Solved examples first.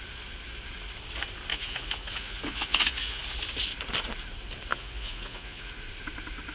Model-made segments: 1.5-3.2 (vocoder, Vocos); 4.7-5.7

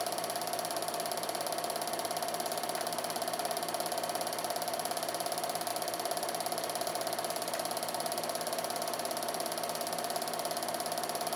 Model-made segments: none